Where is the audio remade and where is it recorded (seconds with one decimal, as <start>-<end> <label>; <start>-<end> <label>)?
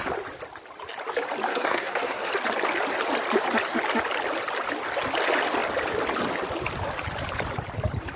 0.0-1.5 recorded; 1.5-2.3 remade; 2.3-8.2 recorded